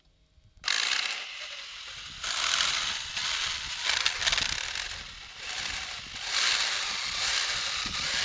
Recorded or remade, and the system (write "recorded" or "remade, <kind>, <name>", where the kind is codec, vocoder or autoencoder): recorded